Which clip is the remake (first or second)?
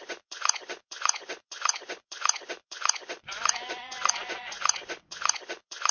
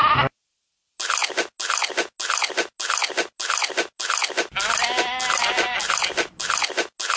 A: first